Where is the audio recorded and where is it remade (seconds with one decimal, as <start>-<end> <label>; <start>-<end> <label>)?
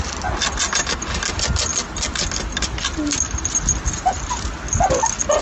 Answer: 0.0-5.4 recorded